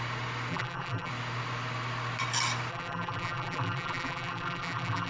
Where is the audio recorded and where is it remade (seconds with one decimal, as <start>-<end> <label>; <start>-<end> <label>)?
0.0-0.5 recorded; 0.5-1.1 remade; 1.1-2.7 recorded; 2.7-5.1 remade